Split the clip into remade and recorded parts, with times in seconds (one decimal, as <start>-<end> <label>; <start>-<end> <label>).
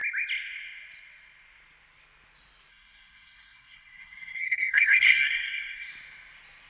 0.0-2.7 recorded; 2.7-5.9 remade; 5.9-6.7 recorded